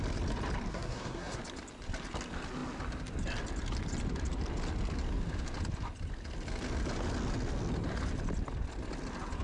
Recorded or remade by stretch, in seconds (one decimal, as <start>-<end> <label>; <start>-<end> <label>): 0.0-0.7 recorded; 0.7-1.4 remade; 1.4-9.4 recorded